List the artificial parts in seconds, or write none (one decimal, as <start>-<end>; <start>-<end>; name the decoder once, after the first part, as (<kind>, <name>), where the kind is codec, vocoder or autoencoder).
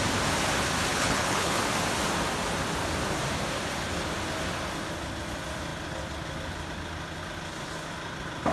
0.9-1.6 (codec, HILCodec)